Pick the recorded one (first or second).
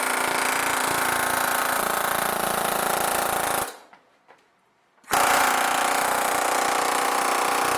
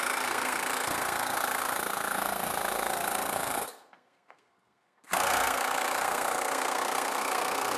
first